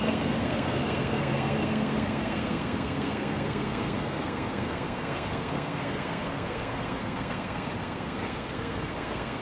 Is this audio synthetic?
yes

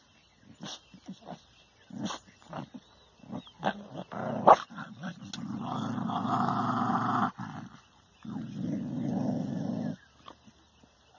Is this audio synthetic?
no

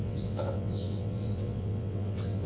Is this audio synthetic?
yes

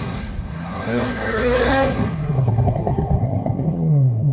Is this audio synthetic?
yes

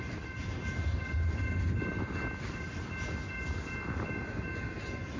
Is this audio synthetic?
no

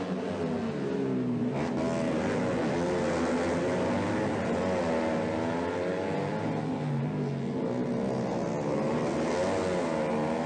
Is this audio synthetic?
no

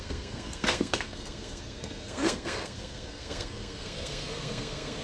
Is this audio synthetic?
yes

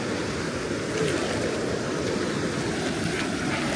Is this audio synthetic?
no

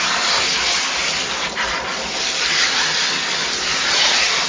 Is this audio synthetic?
no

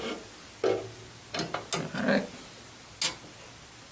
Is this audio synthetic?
no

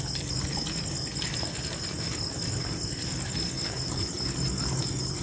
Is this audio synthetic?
no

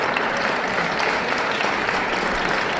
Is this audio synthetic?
no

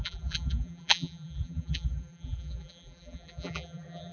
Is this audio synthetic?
yes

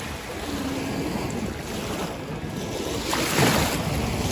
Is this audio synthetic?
no